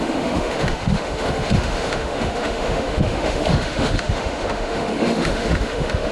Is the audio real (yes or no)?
no